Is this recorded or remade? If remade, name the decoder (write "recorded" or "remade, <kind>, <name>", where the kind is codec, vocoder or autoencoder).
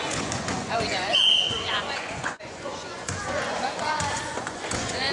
remade, vocoder, Vocos